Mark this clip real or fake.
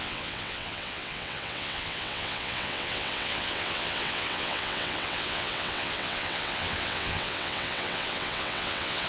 fake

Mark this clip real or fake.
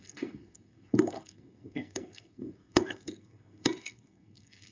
fake